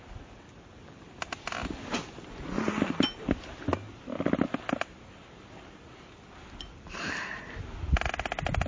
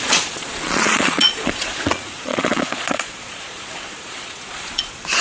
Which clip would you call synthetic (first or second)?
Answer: second